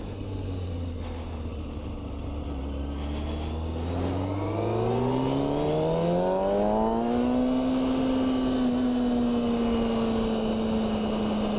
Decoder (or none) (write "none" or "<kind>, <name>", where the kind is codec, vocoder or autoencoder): none